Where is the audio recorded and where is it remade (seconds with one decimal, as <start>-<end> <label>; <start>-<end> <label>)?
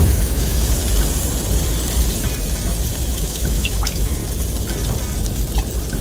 0.0-0.8 remade; 0.8-2.9 recorded; 2.9-4.2 remade; 4.2-6.0 recorded